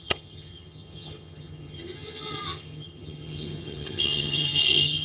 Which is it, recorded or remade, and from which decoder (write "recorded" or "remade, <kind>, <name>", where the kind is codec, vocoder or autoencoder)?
remade, vocoder, HiFi-GAN